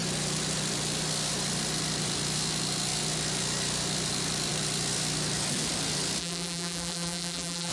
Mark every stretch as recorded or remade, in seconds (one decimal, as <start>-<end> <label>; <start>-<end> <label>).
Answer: 0.0-6.2 recorded; 6.2-7.7 remade